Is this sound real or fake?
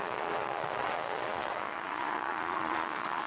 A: fake